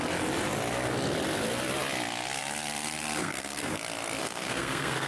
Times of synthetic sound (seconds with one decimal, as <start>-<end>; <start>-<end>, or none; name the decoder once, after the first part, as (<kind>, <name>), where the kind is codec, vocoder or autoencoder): 3.2-3.7 (codec, SNAC); 4.2-5.1